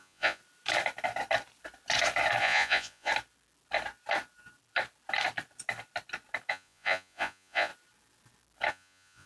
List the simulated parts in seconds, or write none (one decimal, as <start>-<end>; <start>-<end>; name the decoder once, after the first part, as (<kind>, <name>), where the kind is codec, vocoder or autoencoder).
0.0-0.4 (vocoder, Vocos); 2.4-3.1; 6.5-7.7; 8.7-9.3